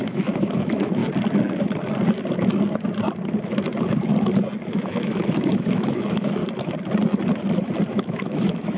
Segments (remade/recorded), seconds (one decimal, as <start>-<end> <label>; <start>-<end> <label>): 0.0-1.0 remade; 1.0-4.8 recorded; 4.8-6.4 remade; 6.4-7.9 recorded; 7.9-8.8 remade